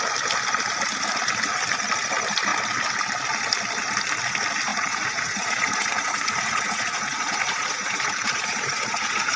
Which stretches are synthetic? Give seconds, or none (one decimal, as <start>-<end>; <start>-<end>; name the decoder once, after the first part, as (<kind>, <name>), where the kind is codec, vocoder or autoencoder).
4.7-9.4 (vocoder, Vocos)